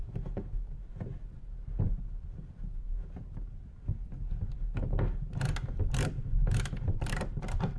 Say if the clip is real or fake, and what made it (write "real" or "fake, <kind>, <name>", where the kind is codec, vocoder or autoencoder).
real